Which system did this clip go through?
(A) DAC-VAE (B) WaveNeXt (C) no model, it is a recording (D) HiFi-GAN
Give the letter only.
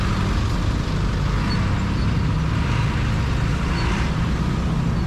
C